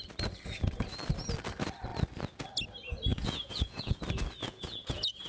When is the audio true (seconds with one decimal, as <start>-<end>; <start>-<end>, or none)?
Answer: 0.0-3.1; 4.0-4.4